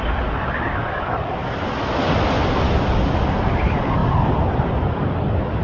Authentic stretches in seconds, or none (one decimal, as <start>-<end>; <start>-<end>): 1.4-3.5; 4.0-5.6